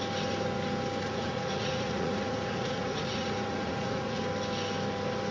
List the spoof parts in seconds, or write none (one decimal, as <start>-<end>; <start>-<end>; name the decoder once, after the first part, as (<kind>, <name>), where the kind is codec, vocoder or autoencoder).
1.0-4.2 (vocoder, Vocos)